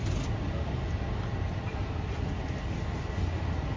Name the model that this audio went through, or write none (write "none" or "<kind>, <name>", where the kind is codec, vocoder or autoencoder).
none